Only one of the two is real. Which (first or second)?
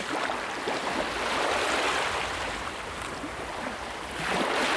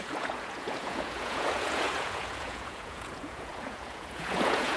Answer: first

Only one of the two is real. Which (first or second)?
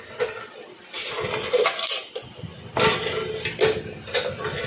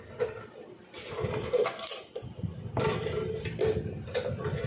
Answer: first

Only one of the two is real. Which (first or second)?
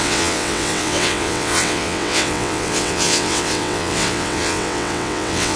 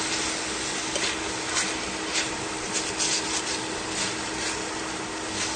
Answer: second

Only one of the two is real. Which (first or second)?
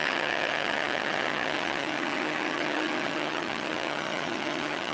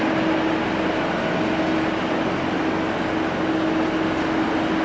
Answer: second